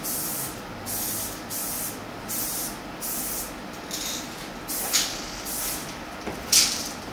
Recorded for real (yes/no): yes